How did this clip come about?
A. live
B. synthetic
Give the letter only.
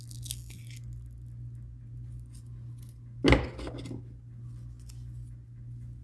A